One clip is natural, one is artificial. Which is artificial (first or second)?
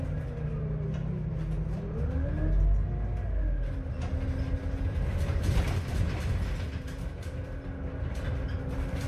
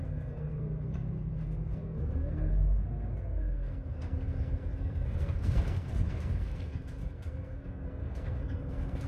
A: second